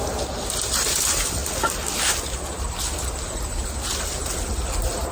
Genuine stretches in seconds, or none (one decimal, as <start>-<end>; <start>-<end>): 0.0-5.1